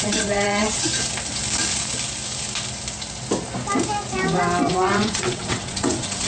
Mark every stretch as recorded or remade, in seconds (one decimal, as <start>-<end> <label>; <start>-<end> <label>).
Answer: 0.0-0.9 remade; 0.9-4.7 recorded; 4.7-6.3 remade